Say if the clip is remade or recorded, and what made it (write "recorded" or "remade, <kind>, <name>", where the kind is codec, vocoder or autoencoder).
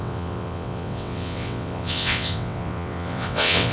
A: remade, vocoder, WaveNeXt